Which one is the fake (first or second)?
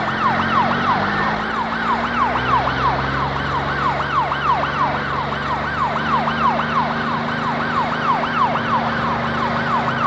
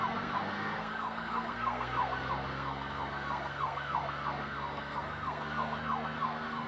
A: second